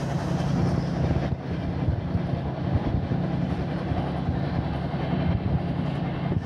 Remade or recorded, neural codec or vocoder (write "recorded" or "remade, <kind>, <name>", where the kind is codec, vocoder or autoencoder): recorded